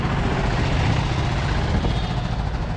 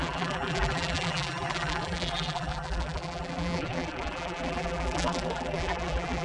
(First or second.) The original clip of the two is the first